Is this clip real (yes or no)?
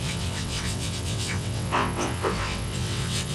no